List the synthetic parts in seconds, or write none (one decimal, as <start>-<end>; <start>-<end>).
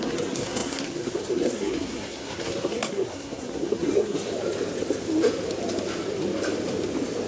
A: 0.0-4.3